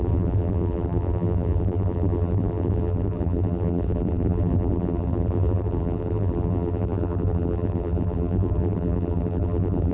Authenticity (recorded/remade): remade